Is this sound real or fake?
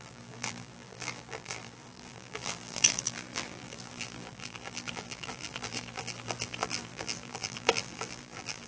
fake